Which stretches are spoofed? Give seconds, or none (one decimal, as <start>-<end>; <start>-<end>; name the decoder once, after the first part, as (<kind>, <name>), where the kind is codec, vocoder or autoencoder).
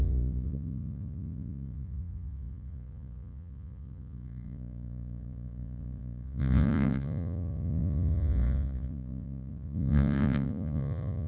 0.0-11.3 (vocoder, Vocos)